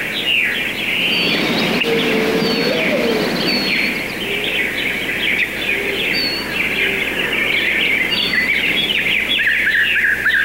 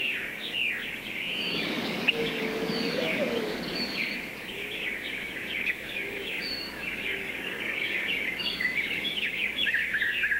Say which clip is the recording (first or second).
first